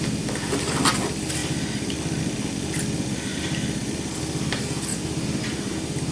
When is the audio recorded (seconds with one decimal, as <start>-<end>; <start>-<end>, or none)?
0.0-1.4; 2.2-3.3; 4.2-4.9